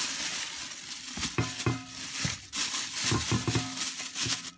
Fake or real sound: real